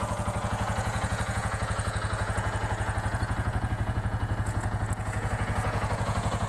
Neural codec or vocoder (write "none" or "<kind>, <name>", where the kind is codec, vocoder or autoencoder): vocoder, Vocos